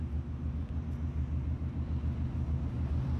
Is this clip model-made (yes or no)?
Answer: no